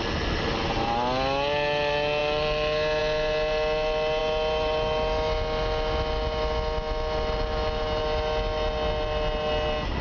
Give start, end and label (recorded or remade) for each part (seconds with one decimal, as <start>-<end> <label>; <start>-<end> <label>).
0.0-10.0 recorded